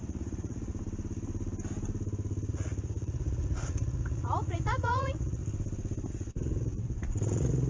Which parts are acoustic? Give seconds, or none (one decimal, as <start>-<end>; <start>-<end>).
0.7-2.5; 5.4-6.1